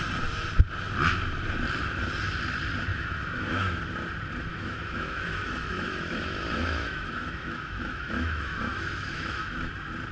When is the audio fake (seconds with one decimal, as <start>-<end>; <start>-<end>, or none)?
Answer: 2.9-3.8; 4.5-9.7